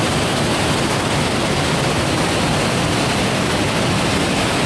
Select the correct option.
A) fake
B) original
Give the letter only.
B